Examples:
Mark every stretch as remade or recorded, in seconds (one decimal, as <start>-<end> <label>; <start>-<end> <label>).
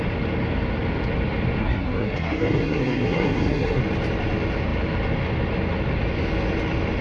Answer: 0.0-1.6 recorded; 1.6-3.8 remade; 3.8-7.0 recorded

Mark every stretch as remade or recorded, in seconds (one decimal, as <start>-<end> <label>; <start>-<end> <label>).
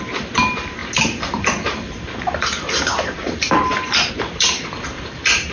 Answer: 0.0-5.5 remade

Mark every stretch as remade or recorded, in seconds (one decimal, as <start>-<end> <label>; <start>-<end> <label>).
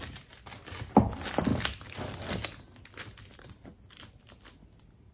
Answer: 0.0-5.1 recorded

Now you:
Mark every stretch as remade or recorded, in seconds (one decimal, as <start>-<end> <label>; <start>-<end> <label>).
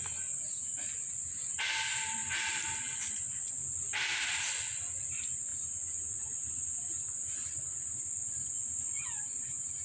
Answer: 0.0-9.8 recorded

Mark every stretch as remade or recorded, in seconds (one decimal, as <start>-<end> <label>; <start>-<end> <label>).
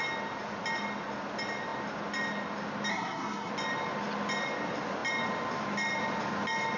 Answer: 0.0-2.9 recorded; 2.9-3.5 remade; 3.5-6.8 recorded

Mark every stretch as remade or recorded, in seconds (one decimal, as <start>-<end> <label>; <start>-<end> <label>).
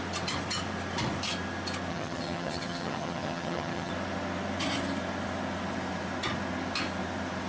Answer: 0.0-1.9 recorded; 1.9-3.9 remade; 3.9-7.5 recorded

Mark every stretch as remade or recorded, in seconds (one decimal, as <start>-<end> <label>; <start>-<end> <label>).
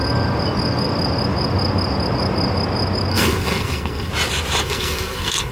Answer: 0.0-3.1 recorded; 3.1-4.1 remade; 4.1-4.6 recorded; 4.6-5.5 remade